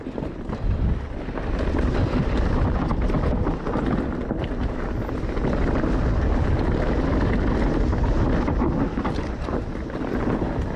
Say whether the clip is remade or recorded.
recorded